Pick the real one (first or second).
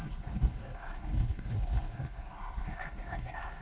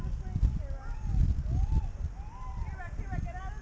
second